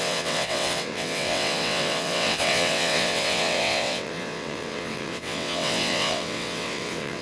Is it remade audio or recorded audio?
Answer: remade